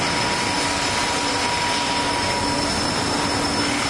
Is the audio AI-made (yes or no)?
no